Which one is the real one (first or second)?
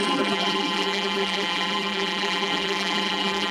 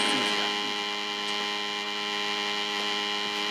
second